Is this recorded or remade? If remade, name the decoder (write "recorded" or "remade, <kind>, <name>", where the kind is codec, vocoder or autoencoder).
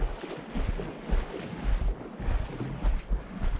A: recorded